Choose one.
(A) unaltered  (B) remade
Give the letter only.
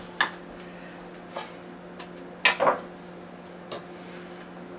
A